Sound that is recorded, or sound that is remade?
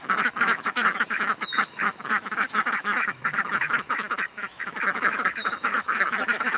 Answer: remade